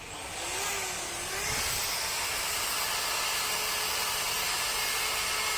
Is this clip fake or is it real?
real